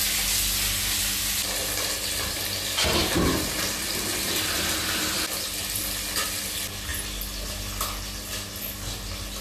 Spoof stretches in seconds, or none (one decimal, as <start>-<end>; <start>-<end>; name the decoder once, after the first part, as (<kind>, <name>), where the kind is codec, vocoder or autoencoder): none